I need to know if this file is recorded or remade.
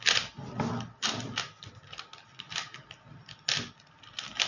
recorded